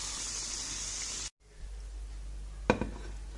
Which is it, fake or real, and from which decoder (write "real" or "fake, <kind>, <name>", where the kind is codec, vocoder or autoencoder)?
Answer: real